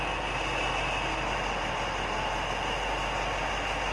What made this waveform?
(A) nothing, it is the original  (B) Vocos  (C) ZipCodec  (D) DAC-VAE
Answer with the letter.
A